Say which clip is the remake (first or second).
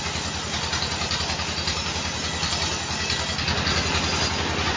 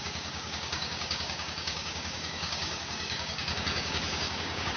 second